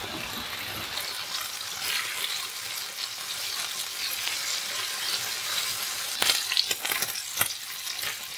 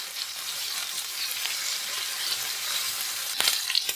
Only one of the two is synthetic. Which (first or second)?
second